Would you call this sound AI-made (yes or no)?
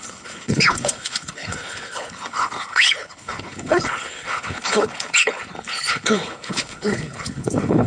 yes